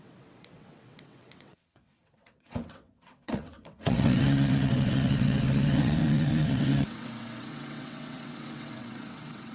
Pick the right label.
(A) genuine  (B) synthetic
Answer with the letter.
B